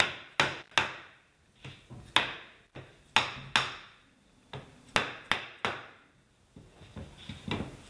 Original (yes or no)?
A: yes